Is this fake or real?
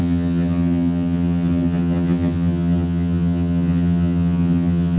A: fake